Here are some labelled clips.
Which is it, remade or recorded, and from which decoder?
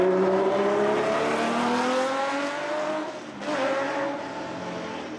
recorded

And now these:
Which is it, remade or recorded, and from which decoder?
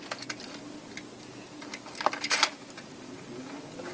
recorded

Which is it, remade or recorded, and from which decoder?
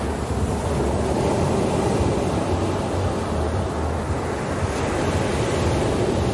recorded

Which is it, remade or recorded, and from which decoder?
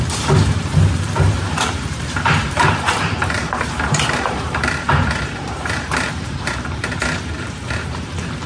remade, vocoder, BigVGAN v2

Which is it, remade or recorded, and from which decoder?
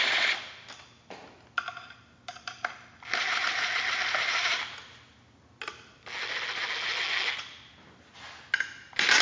recorded